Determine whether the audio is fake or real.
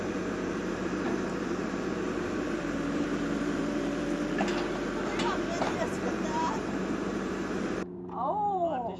fake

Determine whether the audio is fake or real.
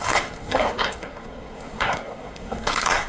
fake